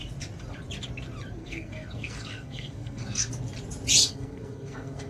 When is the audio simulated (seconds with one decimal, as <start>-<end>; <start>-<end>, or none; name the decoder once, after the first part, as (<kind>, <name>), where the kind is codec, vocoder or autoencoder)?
1.4-3.3 (codec, SNAC); 4.0-5.1

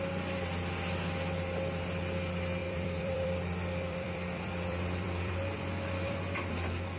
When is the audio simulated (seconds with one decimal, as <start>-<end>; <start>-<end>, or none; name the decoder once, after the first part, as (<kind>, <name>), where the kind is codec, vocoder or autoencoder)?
2.6-6.5 (vocoder, BigVGAN v2)

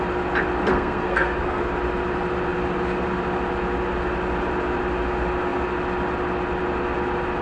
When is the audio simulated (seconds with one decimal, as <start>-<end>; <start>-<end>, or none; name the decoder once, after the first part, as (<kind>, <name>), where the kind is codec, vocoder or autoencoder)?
0.7-1.6 (codec, SNAC)

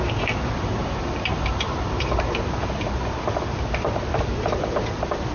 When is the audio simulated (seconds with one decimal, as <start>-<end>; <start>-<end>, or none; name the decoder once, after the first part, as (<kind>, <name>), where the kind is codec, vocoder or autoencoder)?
0.8-2.4 (vocoder, BigVGAN v2)

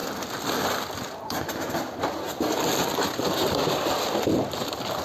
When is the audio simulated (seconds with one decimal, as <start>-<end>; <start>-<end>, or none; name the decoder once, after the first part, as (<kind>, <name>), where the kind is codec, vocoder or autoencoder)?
none

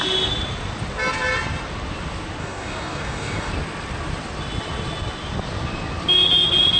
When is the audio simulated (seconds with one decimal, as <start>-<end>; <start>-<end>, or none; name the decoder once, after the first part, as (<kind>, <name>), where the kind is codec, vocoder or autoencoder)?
2.4-3.5 (codec, DAC)